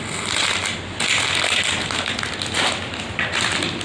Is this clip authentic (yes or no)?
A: yes